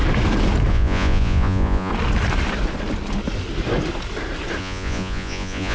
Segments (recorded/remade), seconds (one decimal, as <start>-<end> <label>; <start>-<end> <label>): 0.0-0.7 recorded; 0.7-1.9 remade; 1.9-4.6 recorded; 4.6-5.7 remade